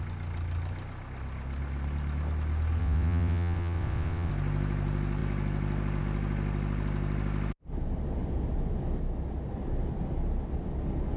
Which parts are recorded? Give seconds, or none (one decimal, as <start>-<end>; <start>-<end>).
0.0-2.8; 4.3-11.2